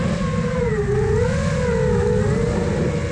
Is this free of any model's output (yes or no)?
yes